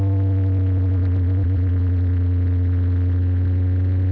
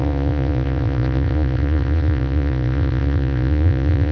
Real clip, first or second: first